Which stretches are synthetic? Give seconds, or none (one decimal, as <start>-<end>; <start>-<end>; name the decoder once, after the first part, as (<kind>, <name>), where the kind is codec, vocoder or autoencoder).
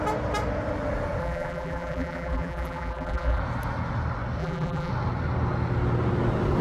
1.2-3.4 (vocoder, BigVGAN v2); 4.4-4.9